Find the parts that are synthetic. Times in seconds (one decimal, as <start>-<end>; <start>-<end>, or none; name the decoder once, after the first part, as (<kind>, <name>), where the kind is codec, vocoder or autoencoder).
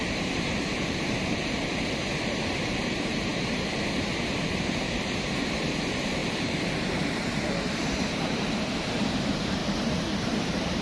0.0-9.6 (vocoder, BigVGAN v2); 10.2-10.8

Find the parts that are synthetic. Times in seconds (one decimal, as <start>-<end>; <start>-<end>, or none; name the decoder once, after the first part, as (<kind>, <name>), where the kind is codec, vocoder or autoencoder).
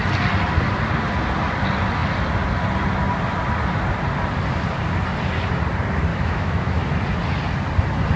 6.1-6.8 (autoencoder, DAC-VAE)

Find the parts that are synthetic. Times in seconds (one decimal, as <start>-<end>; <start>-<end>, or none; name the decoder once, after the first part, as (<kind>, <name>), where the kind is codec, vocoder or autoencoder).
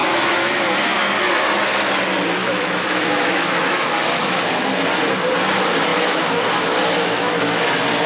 0.0-0.6 (autoencoder, DAC-VAE); 2.4-3.9; 5.9-6.4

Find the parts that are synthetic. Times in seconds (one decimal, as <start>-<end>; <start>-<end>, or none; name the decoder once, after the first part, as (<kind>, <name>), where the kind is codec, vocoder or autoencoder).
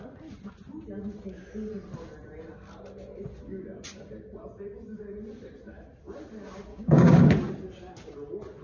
6.7-7.3 (codec, DAC)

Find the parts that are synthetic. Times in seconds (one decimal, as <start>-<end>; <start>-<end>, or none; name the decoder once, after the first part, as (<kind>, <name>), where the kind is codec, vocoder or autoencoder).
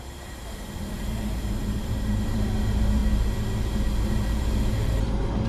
0.0-3.0 (vocoder, BigVGAN v2); 4.0-5.5